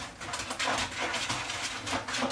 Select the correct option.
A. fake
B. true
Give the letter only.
B